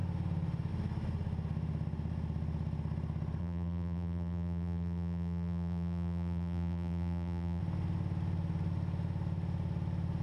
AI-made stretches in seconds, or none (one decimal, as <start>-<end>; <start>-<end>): 3.4-7.6